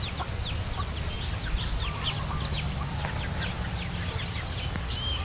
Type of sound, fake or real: real